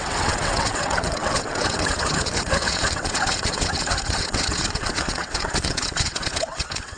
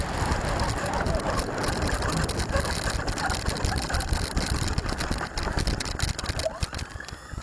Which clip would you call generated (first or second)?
first